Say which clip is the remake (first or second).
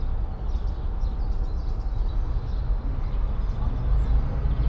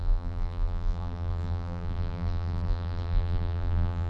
second